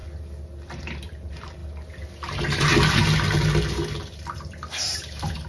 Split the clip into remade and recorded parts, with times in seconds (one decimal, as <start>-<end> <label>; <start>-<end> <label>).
0.0-0.8 recorded; 0.8-1.6 remade; 1.6-2.3 recorded; 2.3-2.7 remade; 2.7-3.7 recorded; 3.7-5.5 remade